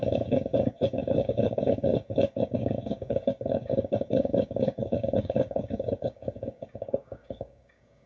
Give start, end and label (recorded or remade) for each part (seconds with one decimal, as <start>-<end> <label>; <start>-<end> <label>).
0.0-8.1 remade